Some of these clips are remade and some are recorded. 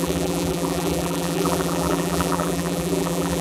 remade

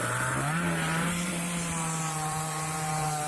remade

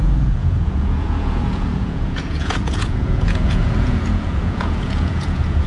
remade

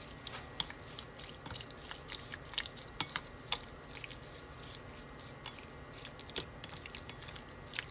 recorded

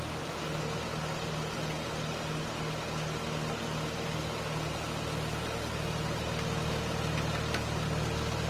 recorded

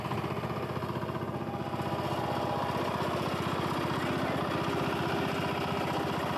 recorded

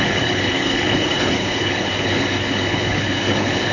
remade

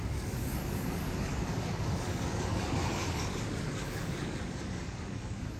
remade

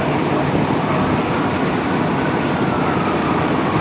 remade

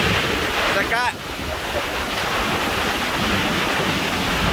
recorded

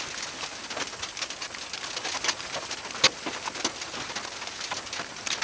recorded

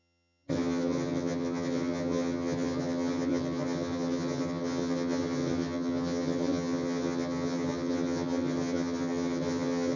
remade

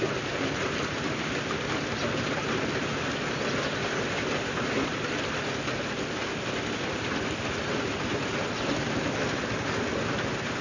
recorded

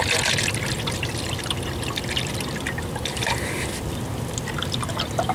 recorded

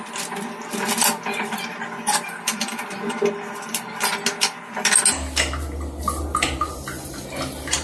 recorded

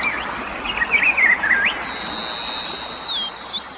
recorded